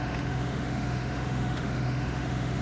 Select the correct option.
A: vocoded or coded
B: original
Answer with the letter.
A